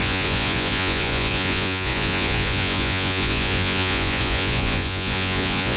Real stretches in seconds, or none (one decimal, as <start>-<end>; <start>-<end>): none